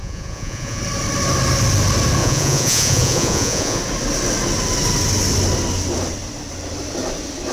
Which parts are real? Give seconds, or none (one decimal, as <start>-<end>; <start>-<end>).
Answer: 0.8-2.2; 3.8-7.5